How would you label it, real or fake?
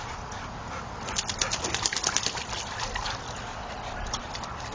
real